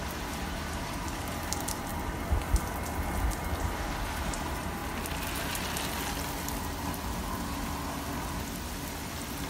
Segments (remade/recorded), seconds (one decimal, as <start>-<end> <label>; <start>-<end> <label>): 0.0-1.9 remade; 1.9-3.6 recorded; 3.6-4.8 remade; 4.8-9.5 recorded